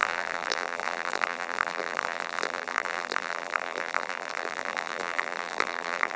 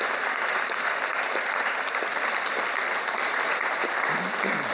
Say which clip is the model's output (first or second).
first